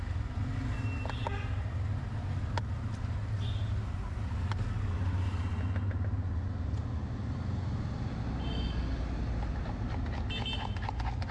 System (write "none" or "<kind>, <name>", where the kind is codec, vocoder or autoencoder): none